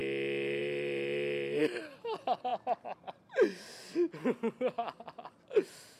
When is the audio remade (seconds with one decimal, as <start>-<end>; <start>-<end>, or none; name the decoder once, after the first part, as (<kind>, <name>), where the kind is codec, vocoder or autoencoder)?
none